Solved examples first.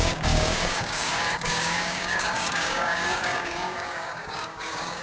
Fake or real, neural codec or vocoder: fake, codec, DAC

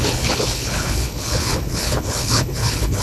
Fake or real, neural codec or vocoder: fake, codec, HILCodec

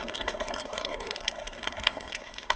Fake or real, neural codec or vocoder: fake, codec, SNAC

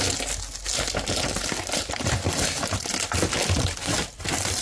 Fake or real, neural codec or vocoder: real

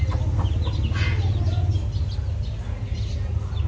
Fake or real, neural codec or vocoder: real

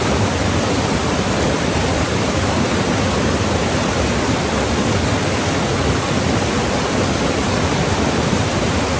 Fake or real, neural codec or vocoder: fake, vocoder, BigVGAN v2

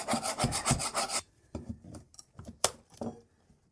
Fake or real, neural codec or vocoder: real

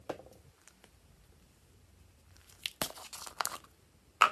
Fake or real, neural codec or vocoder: real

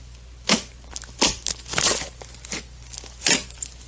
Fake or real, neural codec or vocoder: real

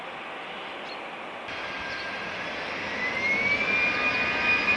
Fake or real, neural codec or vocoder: real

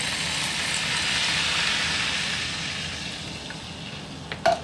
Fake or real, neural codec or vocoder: real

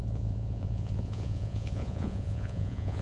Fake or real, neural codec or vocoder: fake, vocoder, Vocos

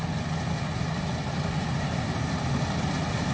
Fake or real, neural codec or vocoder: real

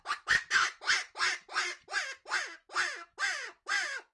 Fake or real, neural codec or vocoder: real